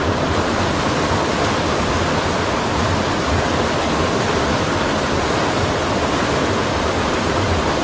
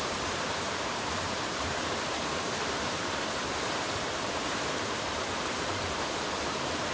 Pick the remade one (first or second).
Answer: second